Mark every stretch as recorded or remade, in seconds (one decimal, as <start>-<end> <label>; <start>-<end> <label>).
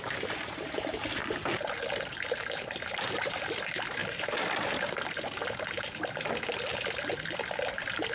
0.0-1.2 remade; 1.2-2.4 recorded; 2.4-4.0 remade; 4.0-5.6 recorded; 5.6-8.1 remade